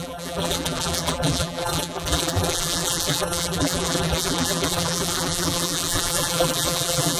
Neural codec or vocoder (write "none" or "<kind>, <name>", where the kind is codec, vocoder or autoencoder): vocoder, BigVGAN v2